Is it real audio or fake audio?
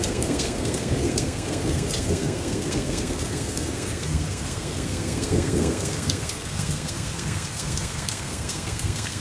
fake